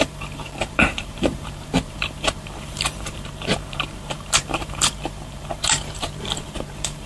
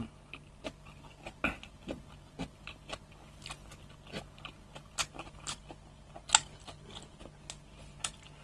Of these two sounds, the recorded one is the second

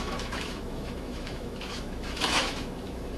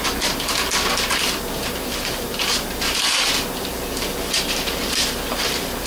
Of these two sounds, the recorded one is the second